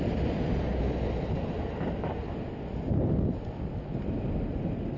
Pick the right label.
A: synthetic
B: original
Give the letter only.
B